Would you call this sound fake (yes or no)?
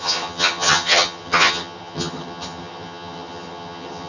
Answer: yes